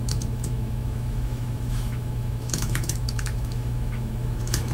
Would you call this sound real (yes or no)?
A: no